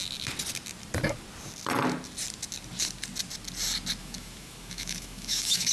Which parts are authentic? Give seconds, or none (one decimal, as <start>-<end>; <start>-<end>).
0.0-4.0